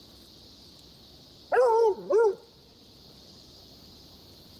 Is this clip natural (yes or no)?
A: yes